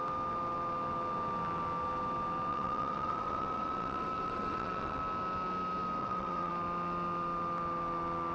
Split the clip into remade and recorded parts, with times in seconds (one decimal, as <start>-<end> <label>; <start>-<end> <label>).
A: 0.0-2.5 recorded; 2.5-5.0 remade; 5.0-6.0 recorded; 6.0-6.5 remade; 6.5-8.3 recorded